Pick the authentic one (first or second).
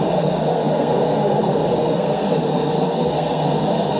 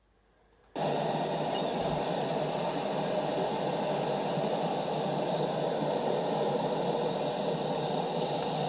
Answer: second